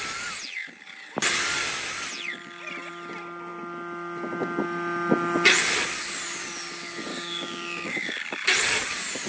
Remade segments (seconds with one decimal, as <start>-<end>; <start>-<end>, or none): 7.1-8.2